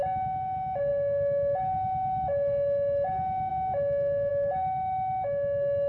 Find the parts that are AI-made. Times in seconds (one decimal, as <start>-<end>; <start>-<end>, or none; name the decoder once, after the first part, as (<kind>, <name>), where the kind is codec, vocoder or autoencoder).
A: 0.9-3.5 (autoencoder, DAC-VAE); 4.3-5.9